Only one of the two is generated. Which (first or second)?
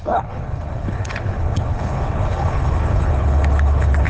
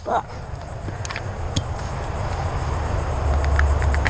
first